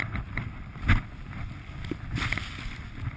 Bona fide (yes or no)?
yes